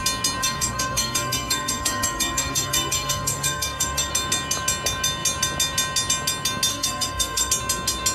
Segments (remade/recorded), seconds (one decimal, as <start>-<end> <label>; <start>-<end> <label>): 0.0-0.4 recorded; 0.4-4.1 remade; 4.1-6.7 recorded; 6.7-7.5 remade; 7.5-8.1 recorded